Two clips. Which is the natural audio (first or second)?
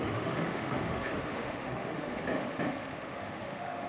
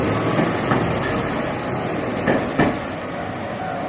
second